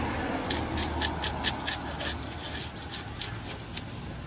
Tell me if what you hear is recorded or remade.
recorded